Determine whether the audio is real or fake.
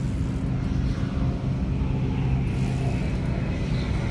real